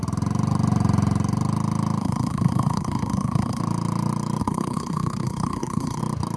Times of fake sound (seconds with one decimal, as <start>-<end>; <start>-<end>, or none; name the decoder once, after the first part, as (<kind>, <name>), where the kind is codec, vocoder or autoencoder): 2.0-3.6 (codec, SNAC); 4.4-6.0